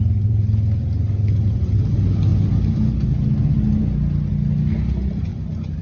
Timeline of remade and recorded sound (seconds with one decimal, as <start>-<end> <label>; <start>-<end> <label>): 0.0-5.8 recorded